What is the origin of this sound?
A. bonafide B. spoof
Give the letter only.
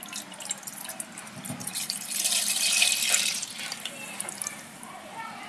B